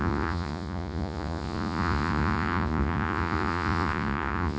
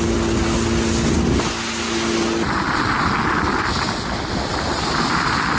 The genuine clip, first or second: second